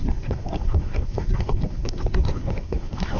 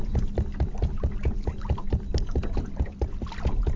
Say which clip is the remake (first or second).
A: first